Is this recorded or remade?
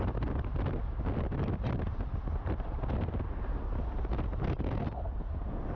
recorded